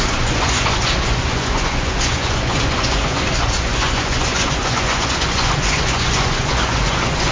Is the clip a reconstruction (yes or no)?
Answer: yes